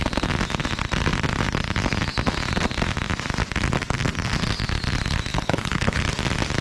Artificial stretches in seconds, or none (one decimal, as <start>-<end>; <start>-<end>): 5.3-6.0